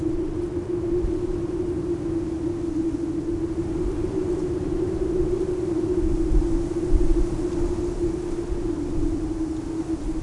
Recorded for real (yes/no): yes